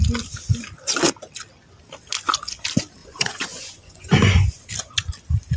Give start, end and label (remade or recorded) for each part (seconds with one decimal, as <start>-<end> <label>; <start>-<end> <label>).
0.0-3.0 recorded; 3.0-4.7 remade; 4.7-5.6 recorded